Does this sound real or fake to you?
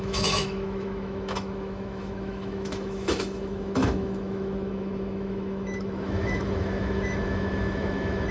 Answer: fake